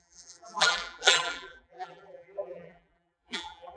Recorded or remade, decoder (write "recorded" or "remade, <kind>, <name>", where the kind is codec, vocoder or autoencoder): remade, vocoder, BigVGAN v2